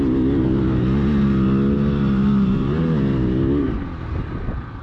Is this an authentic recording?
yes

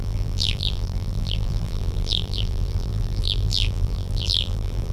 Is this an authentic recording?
no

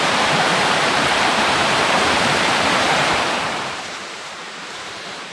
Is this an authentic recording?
no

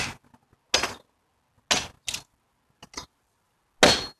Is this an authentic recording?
yes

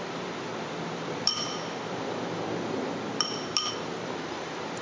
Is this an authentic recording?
no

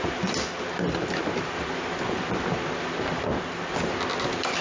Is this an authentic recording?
no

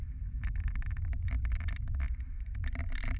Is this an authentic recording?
yes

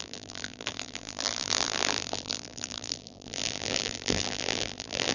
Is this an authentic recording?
no